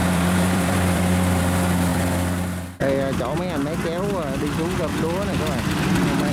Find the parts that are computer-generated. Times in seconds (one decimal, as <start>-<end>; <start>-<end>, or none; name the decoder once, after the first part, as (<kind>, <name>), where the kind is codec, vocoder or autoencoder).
0.0-1.4 (vocoder, BigVGAN v2); 1.9-2.8; 4.9-6.3